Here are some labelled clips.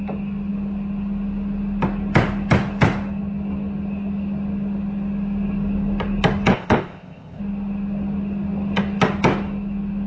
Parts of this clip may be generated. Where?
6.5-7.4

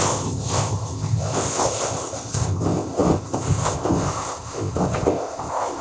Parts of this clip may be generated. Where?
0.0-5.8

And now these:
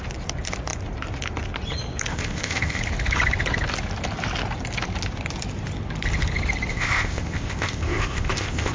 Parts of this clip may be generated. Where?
2.1-2.8; 6.7-8.7

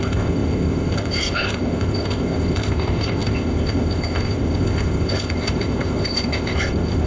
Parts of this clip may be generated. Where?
0.0-7.1

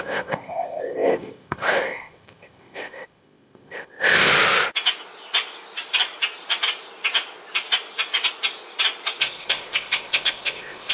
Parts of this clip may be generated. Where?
0.0-4.3; 9.2-10.9

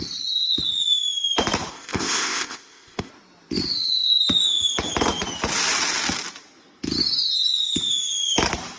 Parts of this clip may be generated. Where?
1.7-3.1